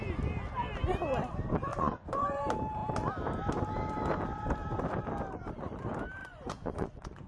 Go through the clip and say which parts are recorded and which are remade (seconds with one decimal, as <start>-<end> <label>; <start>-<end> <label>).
0.0-1.7 recorded; 1.7-2.4 remade; 2.4-6.2 recorded; 6.2-7.3 remade